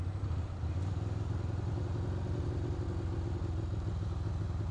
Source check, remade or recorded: recorded